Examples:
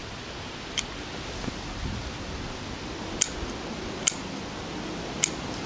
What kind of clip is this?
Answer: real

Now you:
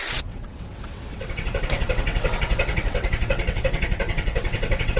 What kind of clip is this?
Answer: fake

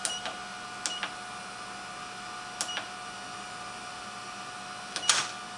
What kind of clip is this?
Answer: real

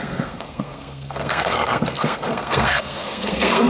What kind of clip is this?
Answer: fake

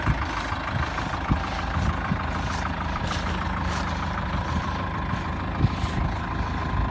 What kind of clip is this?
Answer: fake